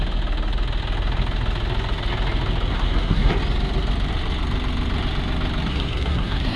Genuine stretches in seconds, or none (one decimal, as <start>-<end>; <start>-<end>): 0.0-2.7; 3.3-5.7